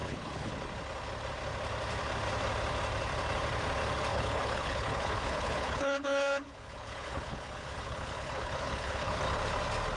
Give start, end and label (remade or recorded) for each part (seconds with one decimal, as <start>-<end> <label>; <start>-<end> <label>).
0.0-0.5 remade; 0.5-4.1 recorded; 4.1-9.2 remade; 9.2-10.0 recorded